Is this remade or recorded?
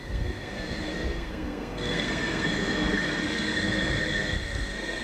remade